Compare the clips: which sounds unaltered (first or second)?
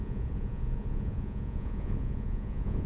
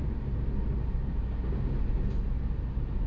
second